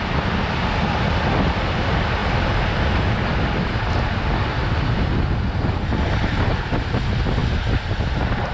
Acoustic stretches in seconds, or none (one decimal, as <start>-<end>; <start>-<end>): 0.0-8.5